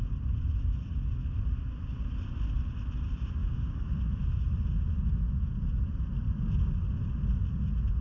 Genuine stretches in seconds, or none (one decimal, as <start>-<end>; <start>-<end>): 0.0-3.4; 3.9-8.0